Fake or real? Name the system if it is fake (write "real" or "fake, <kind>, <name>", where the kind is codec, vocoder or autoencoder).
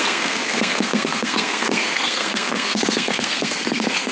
fake, codec, SNAC